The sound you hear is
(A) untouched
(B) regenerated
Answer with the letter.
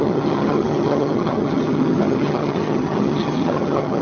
B